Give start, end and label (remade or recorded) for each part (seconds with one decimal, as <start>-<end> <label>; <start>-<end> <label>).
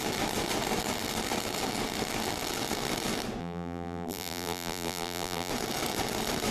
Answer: 0.0-3.4 recorded; 3.4-5.5 remade; 5.5-6.5 recorded